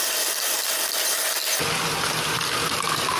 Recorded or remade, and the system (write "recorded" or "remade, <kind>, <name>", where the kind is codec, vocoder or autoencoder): recorded